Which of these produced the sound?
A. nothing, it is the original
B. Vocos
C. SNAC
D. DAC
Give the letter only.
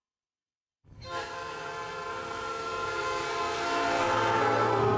C